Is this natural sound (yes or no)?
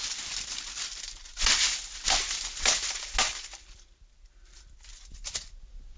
yes